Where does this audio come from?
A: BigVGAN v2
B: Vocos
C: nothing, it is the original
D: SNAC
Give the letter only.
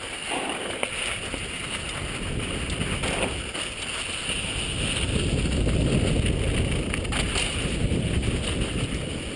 C